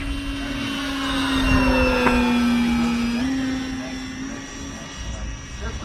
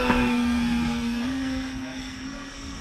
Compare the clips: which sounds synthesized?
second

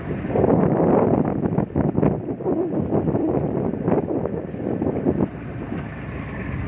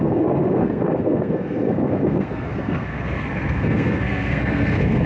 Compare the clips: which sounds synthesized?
second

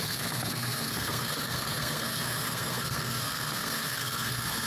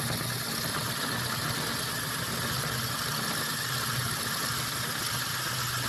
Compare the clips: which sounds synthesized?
first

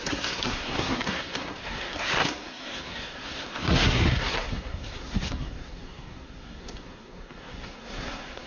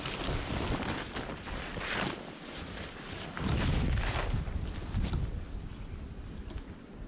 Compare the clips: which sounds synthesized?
first